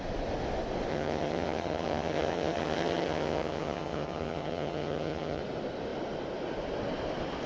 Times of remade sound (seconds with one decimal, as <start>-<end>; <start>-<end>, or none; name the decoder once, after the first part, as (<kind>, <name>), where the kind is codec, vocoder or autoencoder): 0.9-5.4 (vocoder, HiFi-GAN)